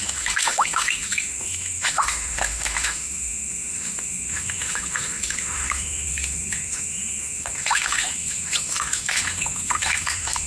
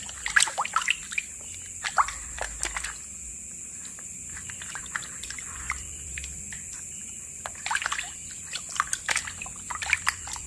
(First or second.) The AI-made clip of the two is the first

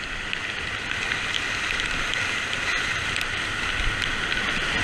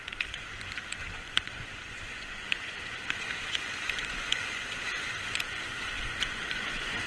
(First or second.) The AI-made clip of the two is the second